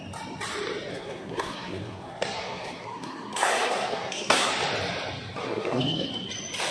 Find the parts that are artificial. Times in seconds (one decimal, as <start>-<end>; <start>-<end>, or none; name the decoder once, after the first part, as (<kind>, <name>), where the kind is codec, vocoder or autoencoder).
0.9-4.5 (codec, SNAC); 5.4-6.1